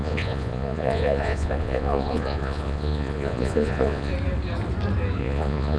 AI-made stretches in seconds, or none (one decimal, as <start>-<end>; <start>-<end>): 0.0-4.1; 5.2-5.8